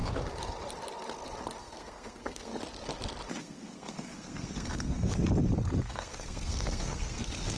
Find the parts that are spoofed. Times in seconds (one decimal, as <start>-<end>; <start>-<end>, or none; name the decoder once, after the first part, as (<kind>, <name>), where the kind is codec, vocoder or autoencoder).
1.6-2.5 (codec, SNAC); 3.4-5.2; 5.8-7.6